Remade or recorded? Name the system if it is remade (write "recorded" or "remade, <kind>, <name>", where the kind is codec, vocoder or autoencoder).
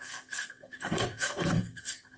remade, codec, SNAC